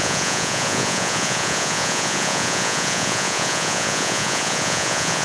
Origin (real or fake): fake